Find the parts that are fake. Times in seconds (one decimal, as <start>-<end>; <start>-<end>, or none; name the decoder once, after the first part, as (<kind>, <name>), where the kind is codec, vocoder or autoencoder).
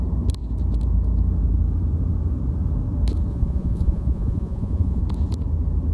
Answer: 3.3-5.0 (vocoder, Vocos)